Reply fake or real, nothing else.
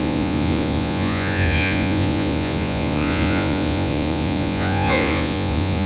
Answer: fake